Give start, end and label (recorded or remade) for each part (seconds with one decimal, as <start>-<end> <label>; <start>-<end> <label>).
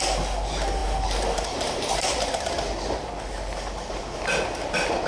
0.0-5.1 recorded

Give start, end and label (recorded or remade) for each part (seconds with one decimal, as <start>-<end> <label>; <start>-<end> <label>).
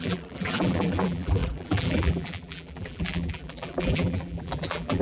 0.0-5.0 remade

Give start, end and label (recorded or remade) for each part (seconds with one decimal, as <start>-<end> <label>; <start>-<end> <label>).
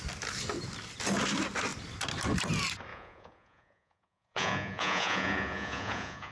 0.0-2.9 recorded; 2.9-6.3 remade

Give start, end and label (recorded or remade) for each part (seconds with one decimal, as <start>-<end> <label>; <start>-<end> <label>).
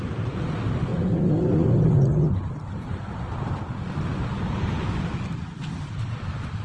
0.0-0.9 remade; 0.9-1.7 recorded; 1.7-2.1 remade; 2.1-5.8 recorded; 5.8-6.6 remade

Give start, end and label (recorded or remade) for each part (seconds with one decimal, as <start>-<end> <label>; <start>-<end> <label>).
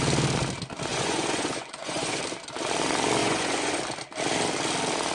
0.0-0.9 recorded; 0.9-2.2 remade; 2.2-3.2 recorded; 3.2-3.8 remade; 3.8-5.1 recorded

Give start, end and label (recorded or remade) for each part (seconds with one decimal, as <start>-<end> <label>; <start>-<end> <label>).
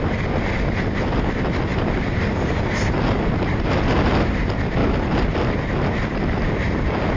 0.0-7.2 recorded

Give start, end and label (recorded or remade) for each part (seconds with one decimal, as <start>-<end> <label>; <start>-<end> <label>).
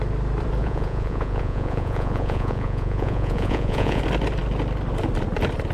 0.0-0.6 recorded; 0.6-4.0 remade; 4.0-5.7 recorded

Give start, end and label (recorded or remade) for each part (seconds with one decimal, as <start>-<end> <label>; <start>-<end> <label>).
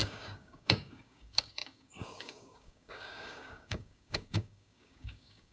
0.0-5.5 remade